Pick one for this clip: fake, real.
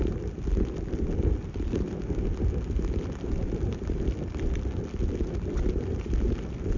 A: real